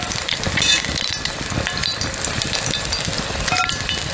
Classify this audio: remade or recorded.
recorded